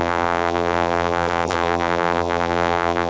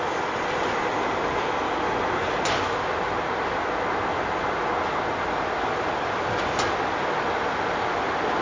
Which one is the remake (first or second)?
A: first